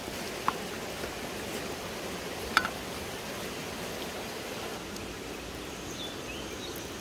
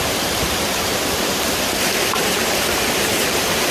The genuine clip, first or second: first